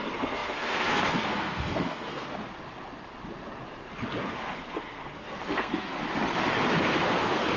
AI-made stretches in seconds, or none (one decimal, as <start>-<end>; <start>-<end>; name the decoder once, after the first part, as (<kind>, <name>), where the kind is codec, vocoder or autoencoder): 0.0-2.3 (codec, SNAC); 4.2-6.0; 6.8-7.6